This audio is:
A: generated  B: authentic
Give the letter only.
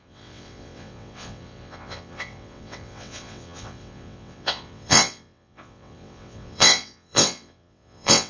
A